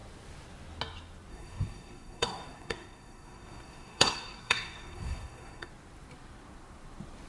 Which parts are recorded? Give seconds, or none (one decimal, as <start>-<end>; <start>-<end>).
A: 0.0-1.3; 5.7-7.3